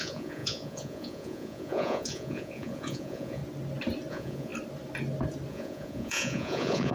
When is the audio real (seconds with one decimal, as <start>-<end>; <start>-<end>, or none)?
3.4-4.1; 4.5-5.5